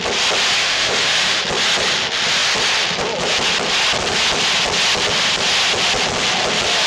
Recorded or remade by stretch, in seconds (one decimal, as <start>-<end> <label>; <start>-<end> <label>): 0.0-0.6 recorded; 0.6-1.4 remade; 1.4-6.9 recorded